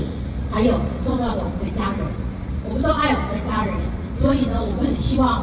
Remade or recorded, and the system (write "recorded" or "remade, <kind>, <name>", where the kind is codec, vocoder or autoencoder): remade, vocoder, Vocos